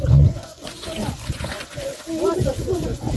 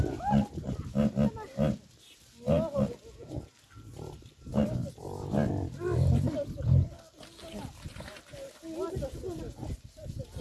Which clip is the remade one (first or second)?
first